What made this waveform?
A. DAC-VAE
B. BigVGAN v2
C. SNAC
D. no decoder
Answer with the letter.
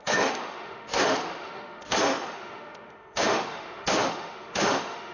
A